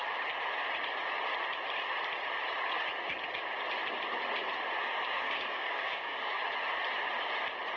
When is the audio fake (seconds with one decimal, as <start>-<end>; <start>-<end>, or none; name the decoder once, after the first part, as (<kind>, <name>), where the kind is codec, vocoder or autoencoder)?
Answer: 4.8-6.5 (codec, DAC)